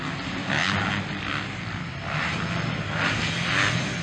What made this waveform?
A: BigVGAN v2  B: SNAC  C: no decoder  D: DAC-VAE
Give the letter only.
C